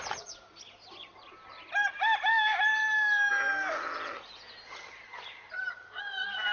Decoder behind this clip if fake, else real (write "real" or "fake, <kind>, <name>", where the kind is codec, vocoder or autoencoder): real